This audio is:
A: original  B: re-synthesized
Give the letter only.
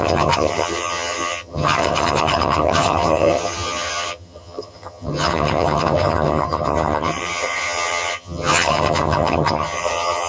B